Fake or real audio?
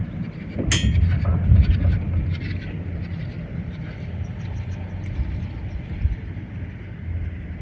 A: real